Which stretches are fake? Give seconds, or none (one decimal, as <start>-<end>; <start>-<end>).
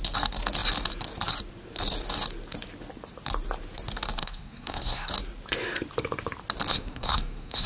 4.2-5.1; 6.7-7.7